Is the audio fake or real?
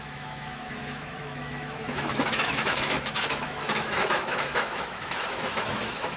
fake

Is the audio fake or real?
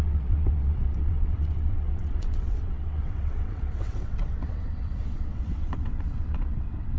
fake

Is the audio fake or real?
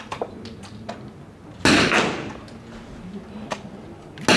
real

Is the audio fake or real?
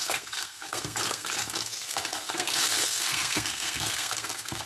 fake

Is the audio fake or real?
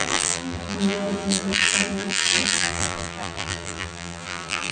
fake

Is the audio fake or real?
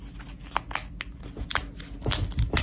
real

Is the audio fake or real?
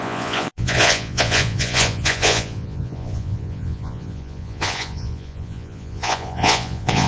fake